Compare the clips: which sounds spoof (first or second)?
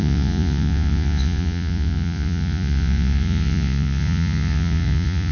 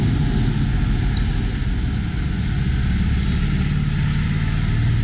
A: first